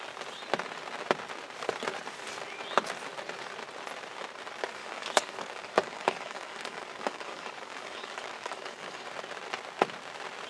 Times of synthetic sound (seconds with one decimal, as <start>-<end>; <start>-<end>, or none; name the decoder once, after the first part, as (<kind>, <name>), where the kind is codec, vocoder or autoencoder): 4.8-9.1 (codec, DAC)

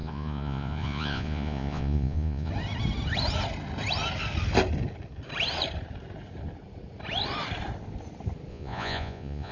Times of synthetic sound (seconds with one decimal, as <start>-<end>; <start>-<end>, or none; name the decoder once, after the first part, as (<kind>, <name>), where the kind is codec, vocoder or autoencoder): 0.0-2.5 (vocoder, Vocos); 8.5-9.5